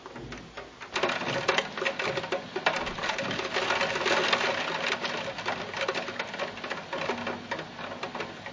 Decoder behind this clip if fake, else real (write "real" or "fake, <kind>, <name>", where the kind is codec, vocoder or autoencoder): real